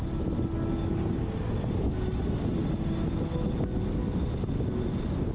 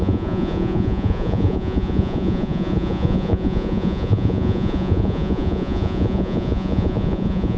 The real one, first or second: first